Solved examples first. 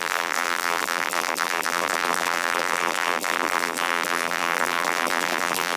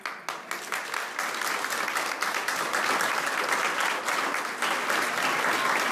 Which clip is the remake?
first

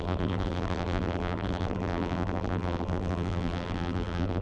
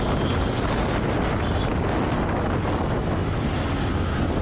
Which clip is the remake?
first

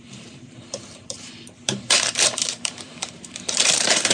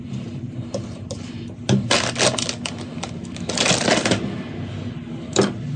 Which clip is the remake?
first